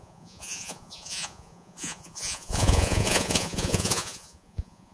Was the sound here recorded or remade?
remade